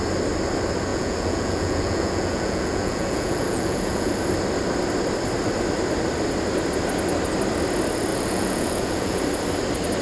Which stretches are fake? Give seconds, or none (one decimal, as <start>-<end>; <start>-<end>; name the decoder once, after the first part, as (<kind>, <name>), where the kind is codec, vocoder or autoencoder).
0.9-4.1 (vocoder, Vocos); 8.1-9.2